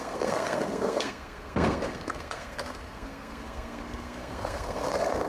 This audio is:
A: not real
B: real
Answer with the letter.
A